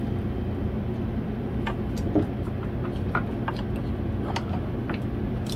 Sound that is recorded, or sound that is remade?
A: recorded